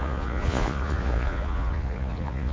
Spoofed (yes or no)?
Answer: yes